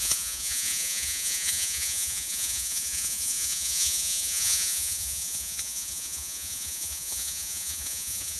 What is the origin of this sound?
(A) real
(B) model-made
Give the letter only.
B